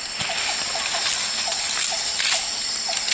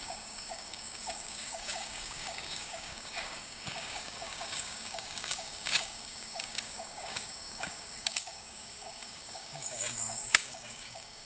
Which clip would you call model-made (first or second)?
second